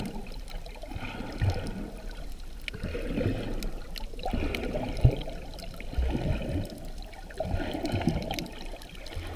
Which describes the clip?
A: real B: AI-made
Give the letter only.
A